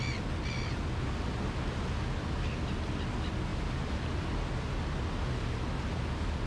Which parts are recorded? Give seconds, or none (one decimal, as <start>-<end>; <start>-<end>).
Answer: 0.0-6.5